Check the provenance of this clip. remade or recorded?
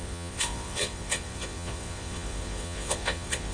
remade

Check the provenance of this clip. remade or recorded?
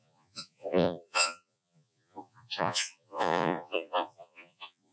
remade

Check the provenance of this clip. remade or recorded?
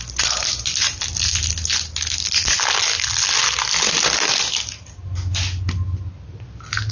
recorded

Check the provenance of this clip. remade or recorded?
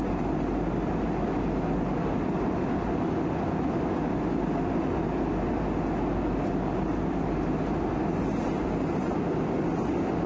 recorded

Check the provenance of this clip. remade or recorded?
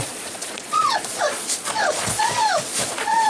remade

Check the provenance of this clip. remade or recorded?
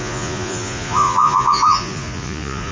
remade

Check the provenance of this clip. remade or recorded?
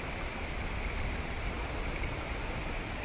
recorded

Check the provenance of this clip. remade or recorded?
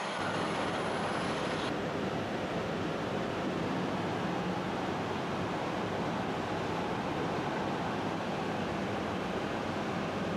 recorded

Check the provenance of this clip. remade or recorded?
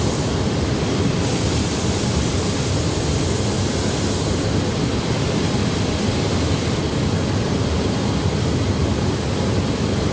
recorded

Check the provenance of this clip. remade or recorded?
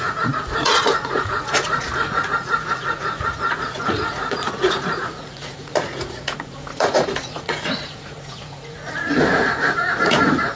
remade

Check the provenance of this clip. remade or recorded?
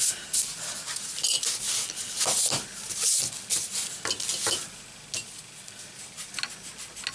recorded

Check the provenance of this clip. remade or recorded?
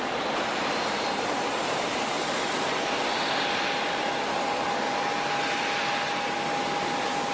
recorded